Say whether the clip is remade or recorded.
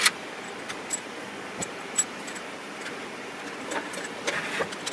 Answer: recorded